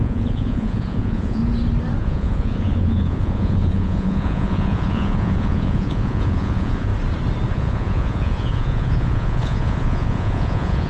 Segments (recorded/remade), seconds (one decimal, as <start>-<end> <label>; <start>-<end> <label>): 0.0-1.4 remade; 1.4-2.0 recorded; 2.0-6.9 remade; 6.9-7.5 recorded; 7.5-10.9 remade